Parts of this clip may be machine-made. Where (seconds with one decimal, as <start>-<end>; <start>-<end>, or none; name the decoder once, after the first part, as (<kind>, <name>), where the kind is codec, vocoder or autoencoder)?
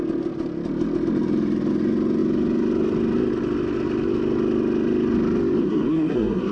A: 5.6-6.5 (codec, SNAC)